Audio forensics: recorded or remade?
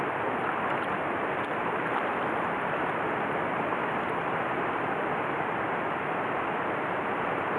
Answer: remade